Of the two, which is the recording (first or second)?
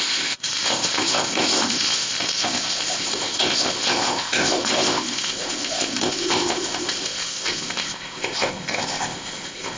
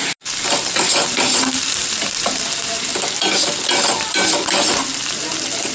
second